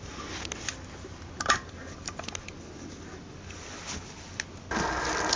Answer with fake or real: real